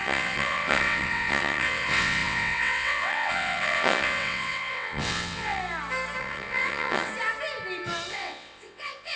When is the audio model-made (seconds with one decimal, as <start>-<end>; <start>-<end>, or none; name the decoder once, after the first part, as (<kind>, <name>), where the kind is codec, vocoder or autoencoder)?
0.0-5.6 (vocoder, WaveNeXt); 6.2-7.1; 8.1-9.2